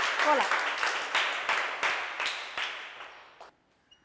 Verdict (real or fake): real